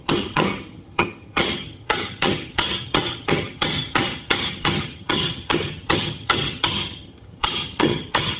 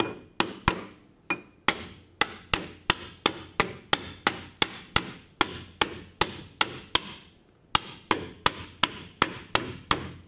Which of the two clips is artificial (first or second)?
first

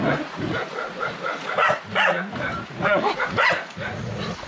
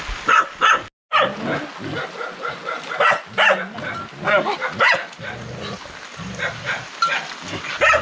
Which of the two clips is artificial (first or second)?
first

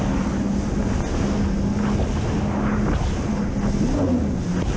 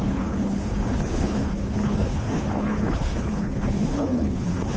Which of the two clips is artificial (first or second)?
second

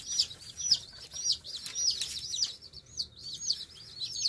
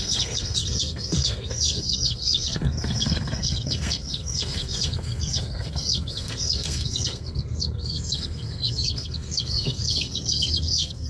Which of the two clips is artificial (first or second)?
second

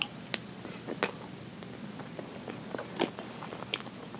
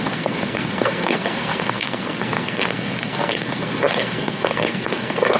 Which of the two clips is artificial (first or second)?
second